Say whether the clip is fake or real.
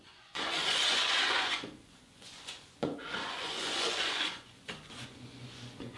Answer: fake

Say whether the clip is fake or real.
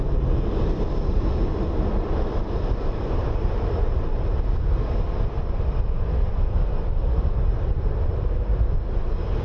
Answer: real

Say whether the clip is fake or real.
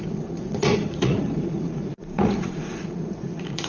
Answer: fake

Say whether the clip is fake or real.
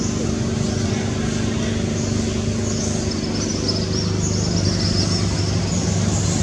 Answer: real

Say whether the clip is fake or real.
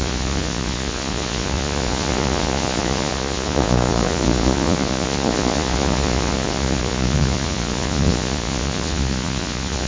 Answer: fake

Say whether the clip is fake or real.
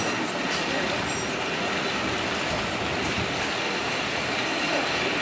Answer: real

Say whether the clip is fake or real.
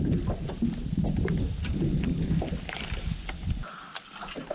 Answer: real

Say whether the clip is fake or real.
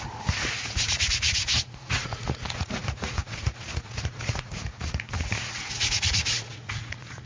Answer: fake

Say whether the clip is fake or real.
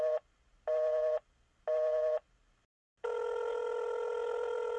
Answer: real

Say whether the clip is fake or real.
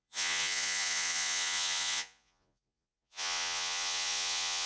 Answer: fake